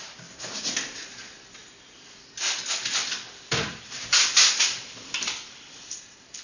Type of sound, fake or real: fake